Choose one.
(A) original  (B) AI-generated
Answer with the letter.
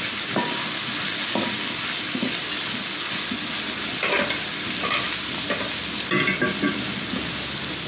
A